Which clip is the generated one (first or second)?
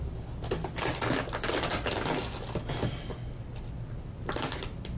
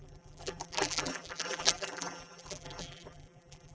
second